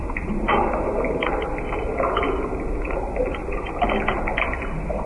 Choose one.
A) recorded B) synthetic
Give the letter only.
A